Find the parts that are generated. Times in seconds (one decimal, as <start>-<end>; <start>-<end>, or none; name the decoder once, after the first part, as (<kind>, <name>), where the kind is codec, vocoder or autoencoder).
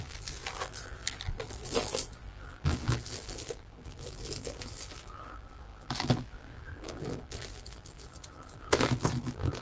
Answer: 0.0-9.6 (vocoder, BigVGAN v2)